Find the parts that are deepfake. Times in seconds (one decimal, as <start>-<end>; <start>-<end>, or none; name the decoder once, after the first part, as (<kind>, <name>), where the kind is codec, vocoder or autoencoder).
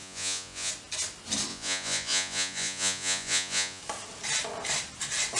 0.0-0.7 (vocoder, Vocos); 1.5-3.8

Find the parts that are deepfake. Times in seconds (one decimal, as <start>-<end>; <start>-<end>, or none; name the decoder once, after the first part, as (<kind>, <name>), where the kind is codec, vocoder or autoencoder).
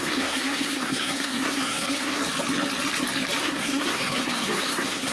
0.0-2.2 (codec, SNAC); 3.4-5.1